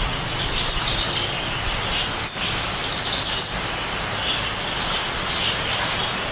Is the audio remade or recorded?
recorded